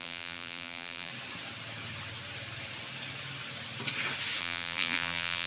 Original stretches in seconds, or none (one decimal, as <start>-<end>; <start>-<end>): 1.1-4.4